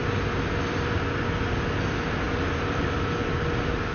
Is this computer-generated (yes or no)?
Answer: no